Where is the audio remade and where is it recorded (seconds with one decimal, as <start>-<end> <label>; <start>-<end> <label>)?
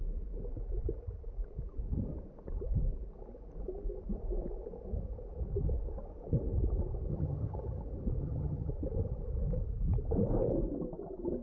0.0-7.1 recorded; 7.1-7.8 remade; 7.8-8.2 recorded; 8.2-8.7 remade; 8.7-11.4 recorded